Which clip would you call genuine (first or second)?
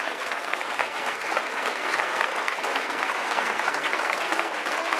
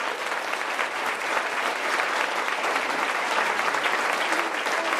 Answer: second